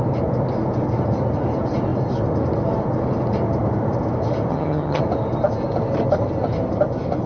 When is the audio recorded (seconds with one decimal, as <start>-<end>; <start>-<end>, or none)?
0.0-4.5; 5.0-7.3